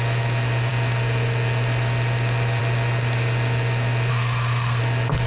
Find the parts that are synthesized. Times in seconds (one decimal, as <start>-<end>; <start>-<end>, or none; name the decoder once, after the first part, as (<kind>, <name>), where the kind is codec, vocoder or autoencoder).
4.1-4.8 (codec, SNAC)